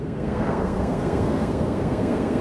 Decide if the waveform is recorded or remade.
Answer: remade